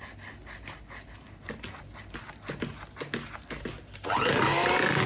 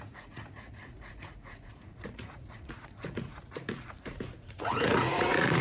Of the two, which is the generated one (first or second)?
second